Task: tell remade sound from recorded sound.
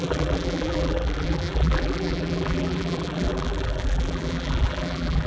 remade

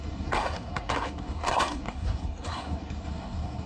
remade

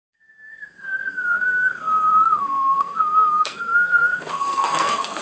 remade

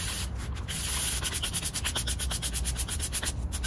recorded